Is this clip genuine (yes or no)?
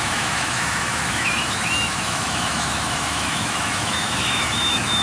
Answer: no